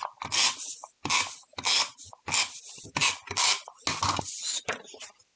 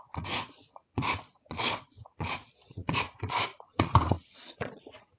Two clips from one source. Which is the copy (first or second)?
second